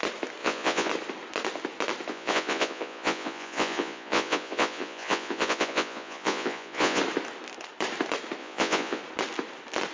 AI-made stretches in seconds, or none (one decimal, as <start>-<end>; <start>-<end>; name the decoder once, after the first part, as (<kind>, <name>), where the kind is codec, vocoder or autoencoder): 0.4-0.9 (vocoder, Vocos); 2.1-7.0; 8.4-9.0